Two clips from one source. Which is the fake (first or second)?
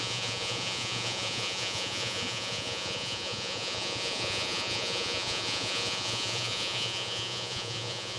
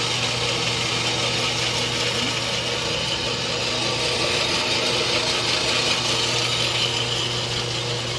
first